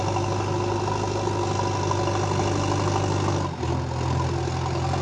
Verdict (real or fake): real